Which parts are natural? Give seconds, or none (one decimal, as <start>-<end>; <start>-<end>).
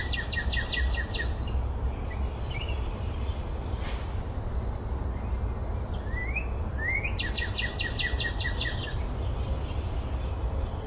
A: 0.0-10.9